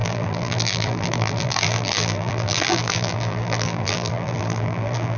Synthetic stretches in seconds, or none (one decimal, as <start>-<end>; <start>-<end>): 0.0-5.2